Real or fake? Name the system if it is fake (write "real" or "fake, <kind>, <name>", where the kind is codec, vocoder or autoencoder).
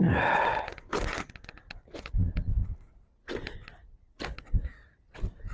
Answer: real